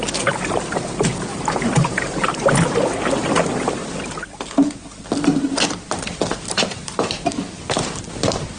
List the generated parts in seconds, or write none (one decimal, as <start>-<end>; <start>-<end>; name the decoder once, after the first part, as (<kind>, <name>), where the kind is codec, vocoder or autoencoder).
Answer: 1.3-2.3 (vocoder, BigVGAN v2); 6.2-7.6

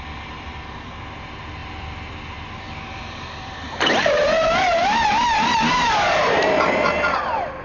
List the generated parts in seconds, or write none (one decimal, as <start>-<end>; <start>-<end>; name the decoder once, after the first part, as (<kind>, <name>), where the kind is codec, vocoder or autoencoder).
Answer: 1.6-3.8 (vocoder, BigVGAN v2); 4.8-7.0

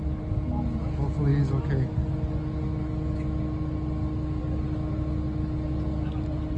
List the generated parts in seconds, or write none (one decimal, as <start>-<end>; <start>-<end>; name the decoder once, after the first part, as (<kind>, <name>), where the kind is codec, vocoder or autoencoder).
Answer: none

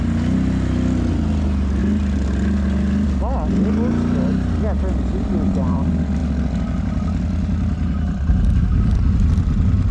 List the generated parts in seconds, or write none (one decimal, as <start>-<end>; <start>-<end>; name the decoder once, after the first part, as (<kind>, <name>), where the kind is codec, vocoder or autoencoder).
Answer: none

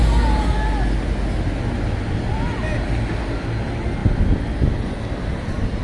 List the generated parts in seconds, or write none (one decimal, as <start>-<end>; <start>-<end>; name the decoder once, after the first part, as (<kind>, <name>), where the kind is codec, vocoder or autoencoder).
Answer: none